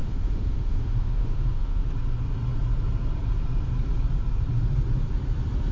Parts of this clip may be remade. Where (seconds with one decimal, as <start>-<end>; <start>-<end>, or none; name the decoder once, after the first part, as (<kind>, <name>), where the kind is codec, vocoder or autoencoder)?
0.0-1.9 (autoencoder, DAC-VAE)